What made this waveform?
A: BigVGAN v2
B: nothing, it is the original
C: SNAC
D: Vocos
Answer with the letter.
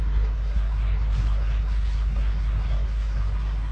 C